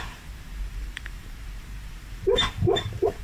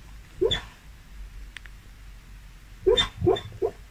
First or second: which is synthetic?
first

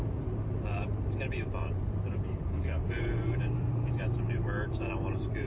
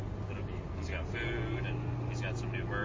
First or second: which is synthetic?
first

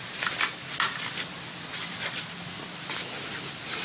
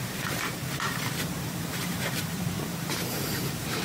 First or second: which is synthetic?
second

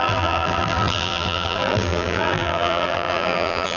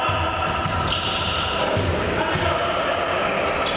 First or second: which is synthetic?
first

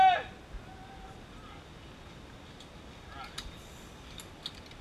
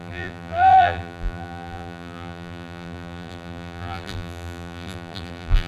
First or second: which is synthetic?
second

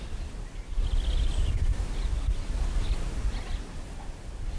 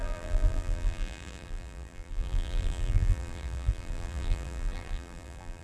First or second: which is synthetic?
second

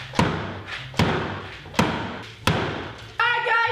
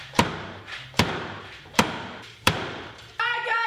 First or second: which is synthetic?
second